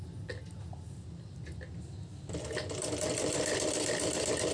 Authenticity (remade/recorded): recorded